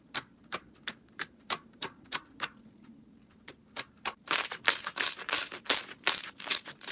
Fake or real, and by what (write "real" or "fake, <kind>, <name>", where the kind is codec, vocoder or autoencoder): fake, vocoder, BigVGAN v2